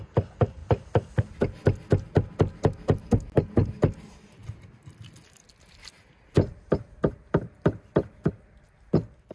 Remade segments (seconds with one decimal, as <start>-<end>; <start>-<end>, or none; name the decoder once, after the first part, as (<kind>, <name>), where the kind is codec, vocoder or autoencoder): none